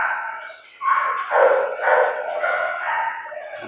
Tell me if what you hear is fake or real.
fake